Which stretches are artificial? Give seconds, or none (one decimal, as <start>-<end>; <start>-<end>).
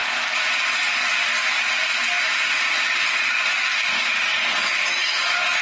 none